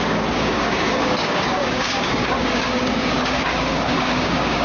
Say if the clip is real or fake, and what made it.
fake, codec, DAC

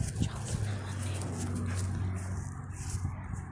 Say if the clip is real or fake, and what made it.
real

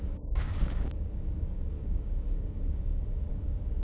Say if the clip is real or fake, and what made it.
fake, codec, DAC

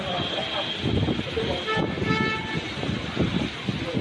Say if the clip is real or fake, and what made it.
real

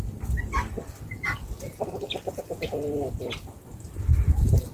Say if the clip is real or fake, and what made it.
fake, vocoder, BigVGAN v2